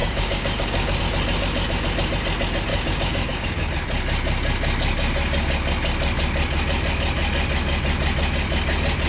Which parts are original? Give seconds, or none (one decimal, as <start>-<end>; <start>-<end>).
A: 1.0-2.7; 3.7-9.1